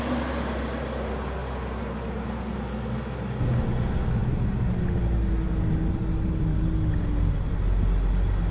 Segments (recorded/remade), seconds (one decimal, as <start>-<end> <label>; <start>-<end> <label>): 0.0-8.5 recorded

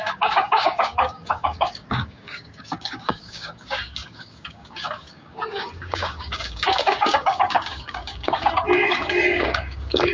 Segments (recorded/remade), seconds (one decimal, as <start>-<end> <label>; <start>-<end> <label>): 0.0-10.1 remade